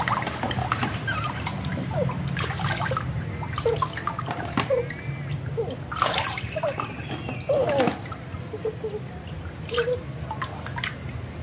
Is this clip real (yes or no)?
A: yes